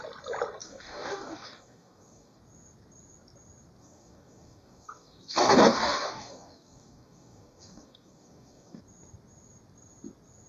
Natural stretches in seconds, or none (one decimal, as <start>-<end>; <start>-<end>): 0.0-0.6; 2.4-3.8; 8.8-10.5